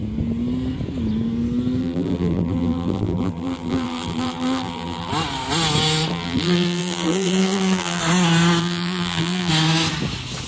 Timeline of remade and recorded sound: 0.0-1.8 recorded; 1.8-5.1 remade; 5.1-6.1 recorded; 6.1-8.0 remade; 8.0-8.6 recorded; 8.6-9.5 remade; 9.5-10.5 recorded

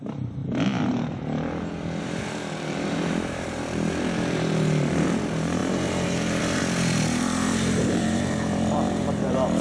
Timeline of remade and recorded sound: 0.0-0.4 remade; 0.4-2.0 recorded; 2.0-9.6 remade

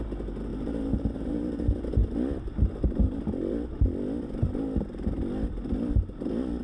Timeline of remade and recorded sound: 0.0-0.5 recorded; 0.5-1.6 remade; 1.6-6.6 recorded

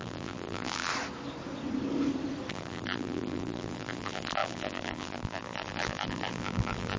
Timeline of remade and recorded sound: 0.0-0.9 remade; 0.9-2.5 recorded; 2.5-7.0 remade

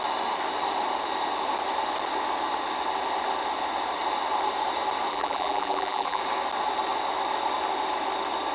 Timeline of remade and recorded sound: 0.0-5.1 recorded; 5.1-6.2 remade; 6.2-8.5 recorded

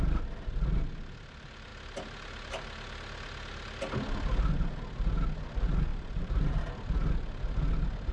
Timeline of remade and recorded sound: 0.0-5.9 recorded; 5.9-6.6 remade; 6.6-8.1 recorded